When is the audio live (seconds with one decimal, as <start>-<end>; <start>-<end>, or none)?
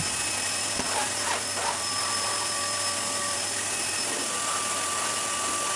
none